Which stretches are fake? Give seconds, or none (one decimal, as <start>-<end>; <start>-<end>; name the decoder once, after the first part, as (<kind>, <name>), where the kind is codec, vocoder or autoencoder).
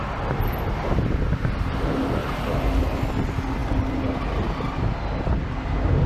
2.2-3.1 (vocoder, BigVGAN v2)